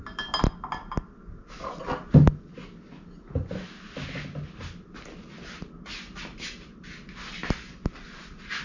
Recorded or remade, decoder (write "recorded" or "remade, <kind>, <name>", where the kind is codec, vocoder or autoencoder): recorded